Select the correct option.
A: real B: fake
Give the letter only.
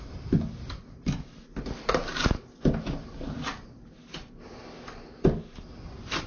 A